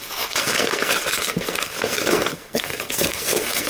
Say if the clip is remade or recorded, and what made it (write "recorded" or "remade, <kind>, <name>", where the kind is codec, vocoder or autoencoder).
remade, codec, SNAC